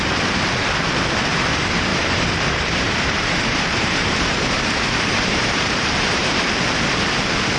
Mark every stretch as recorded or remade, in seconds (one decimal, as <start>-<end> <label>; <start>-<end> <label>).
0.0-1.9 recorded; 1.9-6.5 remade; 6.5-7.6 recorded